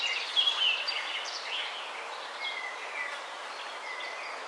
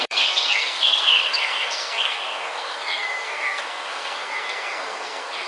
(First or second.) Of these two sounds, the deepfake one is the second